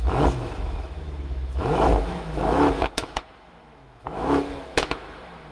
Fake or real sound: fake